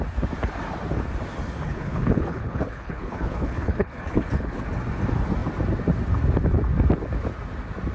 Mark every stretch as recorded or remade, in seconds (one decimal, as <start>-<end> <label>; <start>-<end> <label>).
0.0-1.7 recorded; 1.7-4.6 remade; 4.6-7.9 recorded